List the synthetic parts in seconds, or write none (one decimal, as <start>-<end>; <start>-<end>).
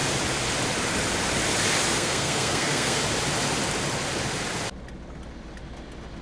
1.9-3.0